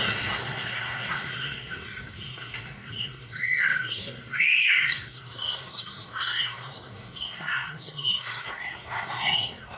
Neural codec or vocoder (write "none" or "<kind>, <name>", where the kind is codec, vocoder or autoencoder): codec, SNAC